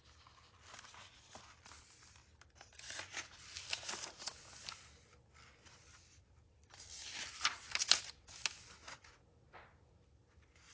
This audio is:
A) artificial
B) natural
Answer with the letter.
B